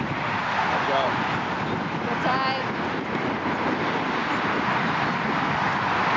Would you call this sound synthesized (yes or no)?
no